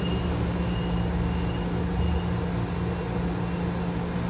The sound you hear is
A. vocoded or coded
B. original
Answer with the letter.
B